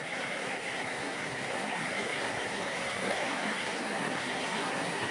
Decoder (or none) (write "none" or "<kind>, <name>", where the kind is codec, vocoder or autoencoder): codec, SNAC